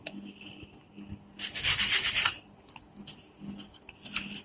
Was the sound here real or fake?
real